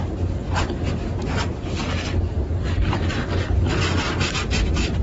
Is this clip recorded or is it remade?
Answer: recorded